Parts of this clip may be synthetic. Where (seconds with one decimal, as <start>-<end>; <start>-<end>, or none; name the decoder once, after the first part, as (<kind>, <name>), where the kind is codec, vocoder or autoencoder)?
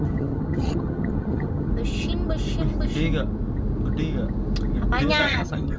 0.0-1.7 (vocoder, HiFi-GAN); 5.2-5.8